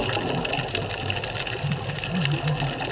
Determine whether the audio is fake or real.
real